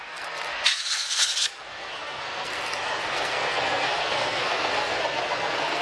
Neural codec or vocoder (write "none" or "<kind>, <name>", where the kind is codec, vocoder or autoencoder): codec, SNAC